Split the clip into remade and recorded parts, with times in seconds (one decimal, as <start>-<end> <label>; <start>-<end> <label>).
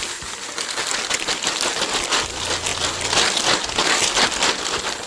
0.0-5.1 recorded